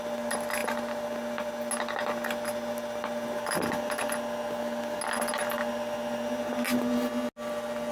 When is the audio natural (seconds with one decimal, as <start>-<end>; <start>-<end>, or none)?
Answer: 0.0-7.9